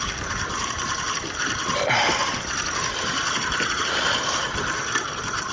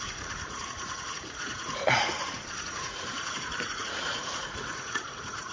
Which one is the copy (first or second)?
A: second